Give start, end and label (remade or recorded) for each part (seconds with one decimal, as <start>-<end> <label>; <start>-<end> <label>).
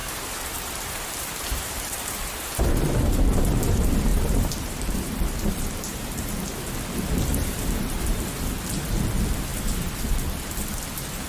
0.0-2.7 remade; 2.7-4.1 recorded; 4.1-6.6 remade; 6.6-7.3 recorded; 7.3-8.2 remade; 8.2-11.3 recorded